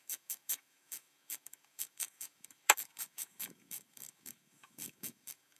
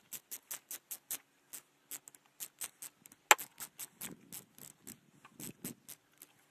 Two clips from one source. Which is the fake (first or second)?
first